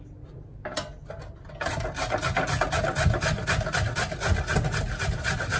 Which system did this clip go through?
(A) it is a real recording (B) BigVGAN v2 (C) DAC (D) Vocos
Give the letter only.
A